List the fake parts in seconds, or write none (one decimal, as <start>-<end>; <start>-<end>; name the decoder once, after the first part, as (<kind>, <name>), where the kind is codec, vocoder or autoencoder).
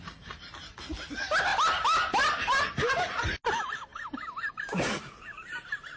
none